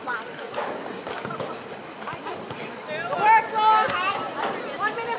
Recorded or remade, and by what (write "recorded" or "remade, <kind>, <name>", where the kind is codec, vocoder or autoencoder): recorded